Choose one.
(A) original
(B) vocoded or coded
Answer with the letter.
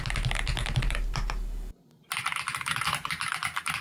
A